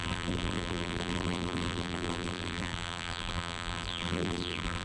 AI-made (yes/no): yes